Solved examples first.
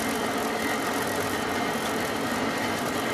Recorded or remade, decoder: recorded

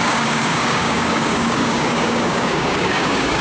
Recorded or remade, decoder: remade, codec, DAC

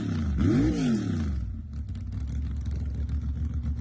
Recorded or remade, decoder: recorded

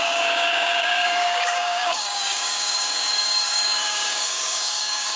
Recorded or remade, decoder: remade, codec, DAC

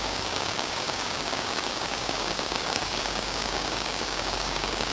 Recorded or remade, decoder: remade, codec, DAC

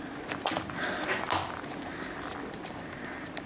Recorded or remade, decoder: recorded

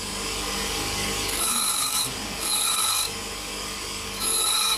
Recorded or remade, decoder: remade, codec, DAC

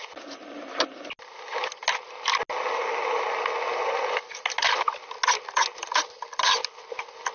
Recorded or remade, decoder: recorded